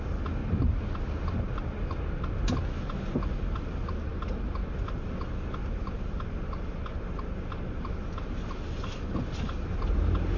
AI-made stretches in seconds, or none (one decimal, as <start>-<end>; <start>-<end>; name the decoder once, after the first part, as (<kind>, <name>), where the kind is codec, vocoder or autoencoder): none